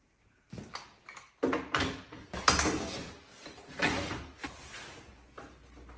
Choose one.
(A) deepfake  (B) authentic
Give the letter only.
B